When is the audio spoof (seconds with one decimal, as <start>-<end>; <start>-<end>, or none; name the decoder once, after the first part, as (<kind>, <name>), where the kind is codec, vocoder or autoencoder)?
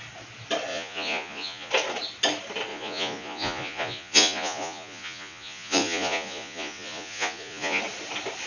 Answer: 0.7-1.7 (vocoder, Vocos); 2.7-7.8